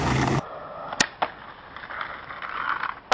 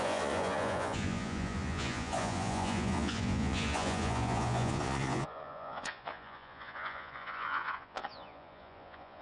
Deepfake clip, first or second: second